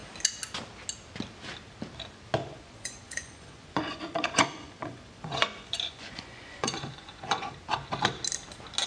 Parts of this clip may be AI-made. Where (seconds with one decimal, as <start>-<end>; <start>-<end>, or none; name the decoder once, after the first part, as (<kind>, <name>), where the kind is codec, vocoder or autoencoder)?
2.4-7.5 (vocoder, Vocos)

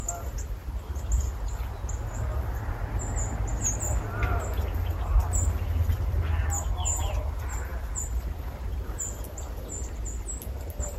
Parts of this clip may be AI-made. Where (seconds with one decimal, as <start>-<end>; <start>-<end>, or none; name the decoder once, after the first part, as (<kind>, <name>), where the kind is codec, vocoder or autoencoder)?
none

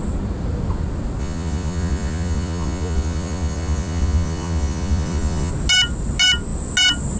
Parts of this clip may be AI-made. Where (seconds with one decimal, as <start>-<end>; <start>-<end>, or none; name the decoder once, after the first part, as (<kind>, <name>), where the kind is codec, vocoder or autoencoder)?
1.2-5.5 (vocoder, Vocos)